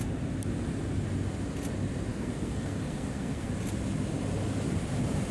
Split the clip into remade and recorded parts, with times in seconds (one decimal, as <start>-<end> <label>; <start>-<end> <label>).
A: 0.0-2.1 recorded; 2.1-3.5 remade; 3.5-5.3 recorded